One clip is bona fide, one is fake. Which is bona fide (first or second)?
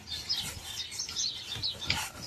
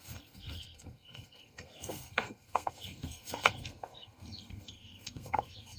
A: first